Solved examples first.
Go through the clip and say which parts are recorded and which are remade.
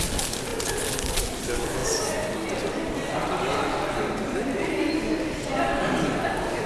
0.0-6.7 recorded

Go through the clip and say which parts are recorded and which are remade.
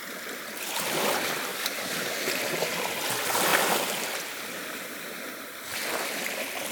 0.0-1.5 recorded; 1.5-2.2 remade; 2.2-6.7 recorded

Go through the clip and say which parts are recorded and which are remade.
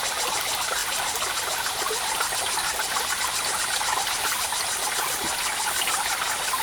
0.0-6.6 recorded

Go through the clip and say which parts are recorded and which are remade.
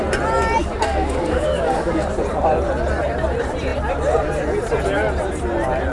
0.0-0.6 recorded; 0.6-2.1 remade; 2.1-5.9 recorded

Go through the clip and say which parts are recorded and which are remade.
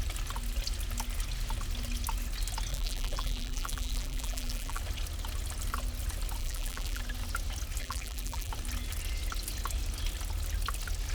0.0-2.7 recorded; 2.7-4.8 remade; 4.8-6.4 recorded; 6.4-7.0 remade; 7.0-7.8 recorded; 7.8-8.5 remade; 8.5-11.1 recorded